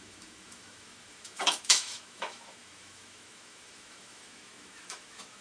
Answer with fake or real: fake